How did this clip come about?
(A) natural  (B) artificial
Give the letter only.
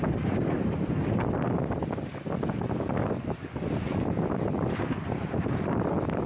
B